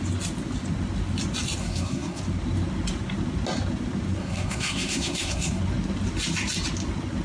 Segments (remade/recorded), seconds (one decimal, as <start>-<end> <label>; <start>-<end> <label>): 0.0-1.6 recorded; 1.6-2.2 remade; 2.2-4.2 recorded; 4.2-5.6 remade; 5.6-7.2 recorded